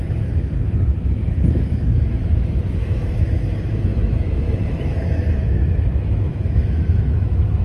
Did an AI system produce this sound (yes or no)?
yes